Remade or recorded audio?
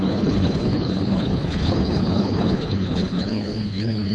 remade